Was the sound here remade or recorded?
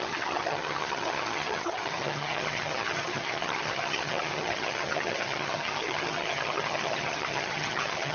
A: remade